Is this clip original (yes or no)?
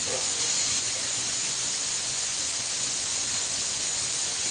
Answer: no